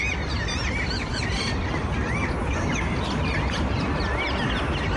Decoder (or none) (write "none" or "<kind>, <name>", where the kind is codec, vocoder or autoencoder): none